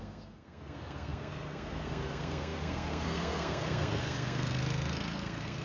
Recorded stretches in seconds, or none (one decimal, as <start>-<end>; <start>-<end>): none